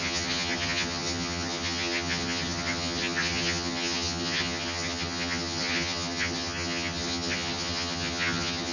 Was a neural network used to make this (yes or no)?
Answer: yes